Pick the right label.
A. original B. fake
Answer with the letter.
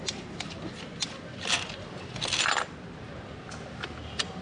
A